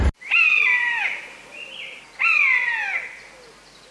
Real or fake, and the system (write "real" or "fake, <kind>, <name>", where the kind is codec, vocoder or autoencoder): real